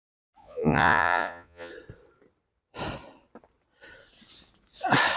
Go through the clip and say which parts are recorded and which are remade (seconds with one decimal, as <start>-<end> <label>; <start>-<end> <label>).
0.0-0.4 recorded; 0.4-1.7 remade; 1.7-5.2 recorded